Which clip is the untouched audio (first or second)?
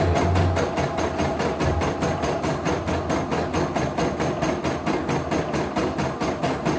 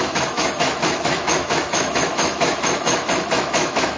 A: first